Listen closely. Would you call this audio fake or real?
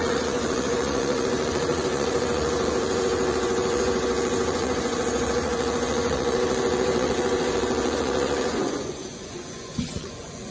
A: fake